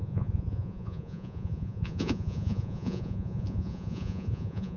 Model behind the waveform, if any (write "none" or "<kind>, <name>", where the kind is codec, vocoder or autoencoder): vocoder, Vocos